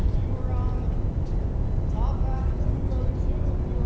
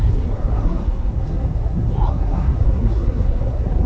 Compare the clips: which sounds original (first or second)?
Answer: first